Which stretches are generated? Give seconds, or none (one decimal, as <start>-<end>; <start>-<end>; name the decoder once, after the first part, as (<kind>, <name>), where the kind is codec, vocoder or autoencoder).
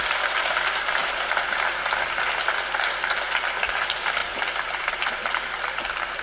none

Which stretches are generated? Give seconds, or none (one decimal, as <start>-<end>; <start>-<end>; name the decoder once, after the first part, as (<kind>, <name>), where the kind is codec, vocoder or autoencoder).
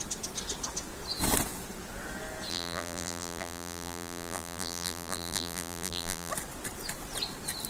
2.5-6.3 (vocoder, BigVGAN v2)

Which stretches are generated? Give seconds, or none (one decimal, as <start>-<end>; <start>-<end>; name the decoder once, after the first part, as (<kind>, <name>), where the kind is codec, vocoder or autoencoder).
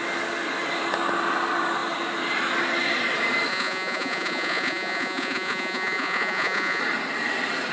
3.5-6.8 (vocoder, Vocos)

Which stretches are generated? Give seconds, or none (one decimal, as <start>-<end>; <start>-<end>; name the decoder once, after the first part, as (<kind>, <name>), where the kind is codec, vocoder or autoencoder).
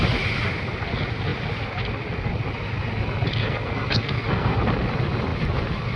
3.4-4.6 (codec, SNAC)